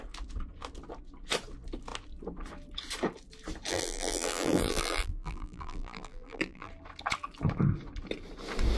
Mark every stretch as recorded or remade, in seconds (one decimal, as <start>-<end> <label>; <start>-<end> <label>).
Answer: 0.0-3.7 recorded; 3.7-6.7 remade; 6.7-8.8 recorded